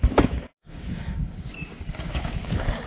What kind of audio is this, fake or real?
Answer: fake